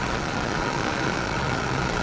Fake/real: fake